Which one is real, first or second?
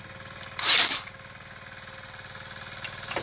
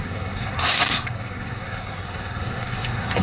first